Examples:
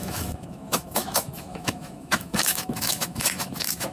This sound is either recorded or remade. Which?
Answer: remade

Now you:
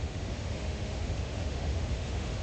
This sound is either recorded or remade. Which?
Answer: remade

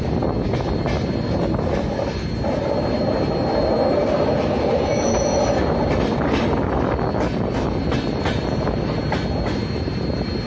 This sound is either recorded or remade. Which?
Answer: recorded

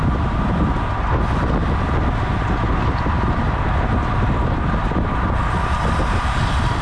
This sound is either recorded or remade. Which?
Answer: recorded